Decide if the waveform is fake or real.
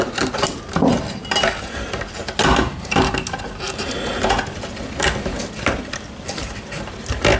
real